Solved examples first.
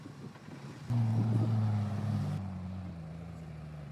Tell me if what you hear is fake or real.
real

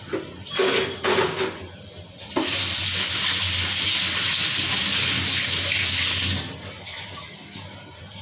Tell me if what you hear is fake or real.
real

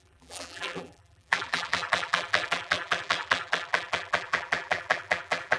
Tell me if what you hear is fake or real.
fake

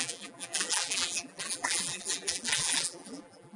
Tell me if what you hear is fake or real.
fake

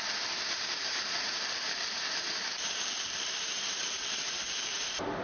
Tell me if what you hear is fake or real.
fake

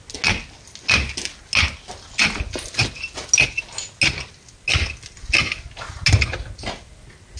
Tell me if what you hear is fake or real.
real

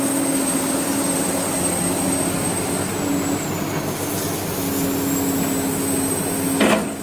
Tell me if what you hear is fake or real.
real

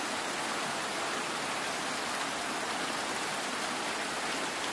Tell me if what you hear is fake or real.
real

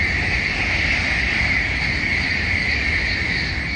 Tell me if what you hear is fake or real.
real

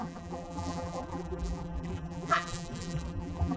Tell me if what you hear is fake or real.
fake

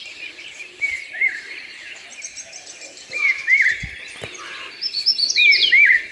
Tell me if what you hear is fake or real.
fake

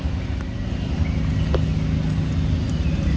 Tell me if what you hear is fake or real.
real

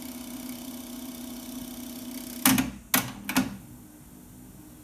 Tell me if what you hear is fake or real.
real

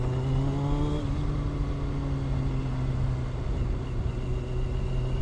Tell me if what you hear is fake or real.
real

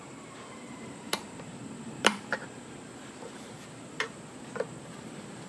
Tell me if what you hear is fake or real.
fake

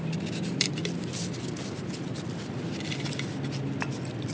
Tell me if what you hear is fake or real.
real